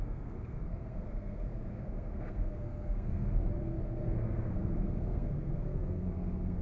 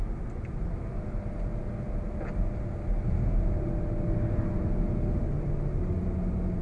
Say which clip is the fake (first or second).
first